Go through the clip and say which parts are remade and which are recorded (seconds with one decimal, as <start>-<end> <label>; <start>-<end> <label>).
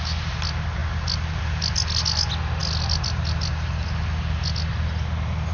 0.0-5.5 recorded